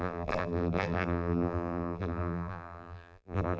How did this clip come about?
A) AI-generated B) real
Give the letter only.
A